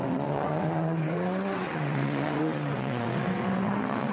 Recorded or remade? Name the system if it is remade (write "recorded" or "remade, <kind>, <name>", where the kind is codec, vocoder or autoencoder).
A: remade, vocoder, WaveNeXt